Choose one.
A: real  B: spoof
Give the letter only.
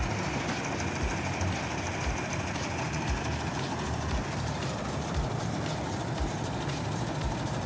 B